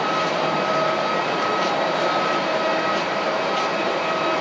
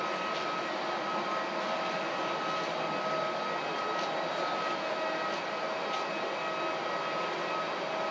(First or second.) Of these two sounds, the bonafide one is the second